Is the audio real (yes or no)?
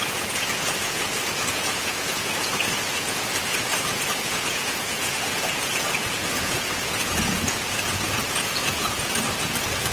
no